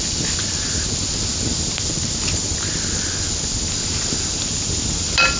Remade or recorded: recorded